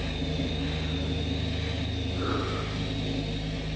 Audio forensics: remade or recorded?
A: recorded